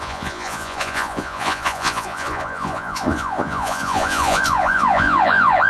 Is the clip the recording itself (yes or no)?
no